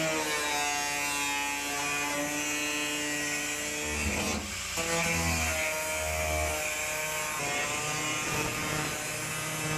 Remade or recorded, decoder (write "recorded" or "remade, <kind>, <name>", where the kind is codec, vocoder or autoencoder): recorded